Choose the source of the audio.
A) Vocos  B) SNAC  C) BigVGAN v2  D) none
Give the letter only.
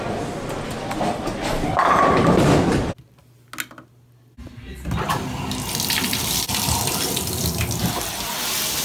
D